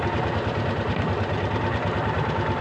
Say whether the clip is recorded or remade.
recorded